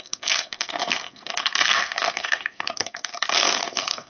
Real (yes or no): no